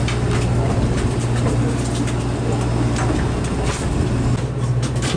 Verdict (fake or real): real